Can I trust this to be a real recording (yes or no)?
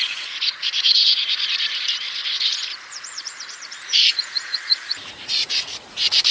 no